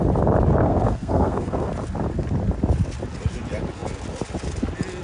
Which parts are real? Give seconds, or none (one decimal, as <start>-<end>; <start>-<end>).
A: 0.0-0.6; 1.7-5.0